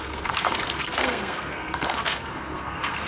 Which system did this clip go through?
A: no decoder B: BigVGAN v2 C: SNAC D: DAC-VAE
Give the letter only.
C